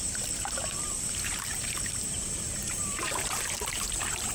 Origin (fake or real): fake